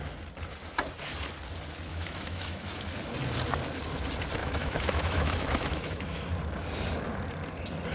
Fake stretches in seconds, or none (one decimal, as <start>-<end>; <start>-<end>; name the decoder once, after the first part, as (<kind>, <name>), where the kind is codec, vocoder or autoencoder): 1.9-2.8 (autoencoder, DAC-VAE); 4.4-6.2